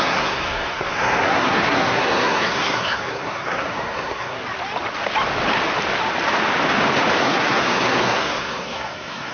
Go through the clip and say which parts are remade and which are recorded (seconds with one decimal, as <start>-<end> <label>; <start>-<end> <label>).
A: 0.0-4.4 remade; 4.4-7.2 recorded; 7.2-9.3 remade